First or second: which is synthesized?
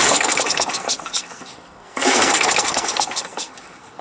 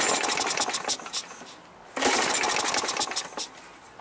first